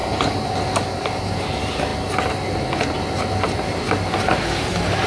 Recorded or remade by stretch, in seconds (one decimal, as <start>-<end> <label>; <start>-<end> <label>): 0.0-5.1 recorded

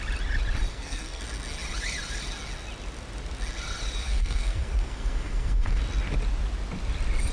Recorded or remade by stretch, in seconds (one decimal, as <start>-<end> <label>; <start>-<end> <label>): 0.0-0.7 recorded; 0.7-1.2 remade; 1.2-4.0 recorded; 4.0-5.8 remade; 5.8-7.3 recorded

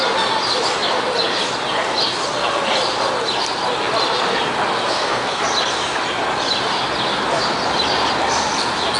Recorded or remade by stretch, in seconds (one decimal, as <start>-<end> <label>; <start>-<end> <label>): 0.0-4.9 recorded; 4.9-5.4 remade; 5.4-9.0 recorded

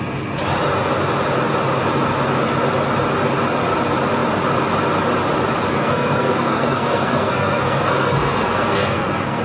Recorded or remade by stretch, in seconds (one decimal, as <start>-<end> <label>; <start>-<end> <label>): 0.0-5.7 recorded; 5.7-9.4 remade

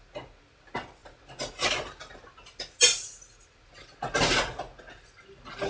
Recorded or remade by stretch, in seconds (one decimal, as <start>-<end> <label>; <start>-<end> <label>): 0.0-5.7 recorded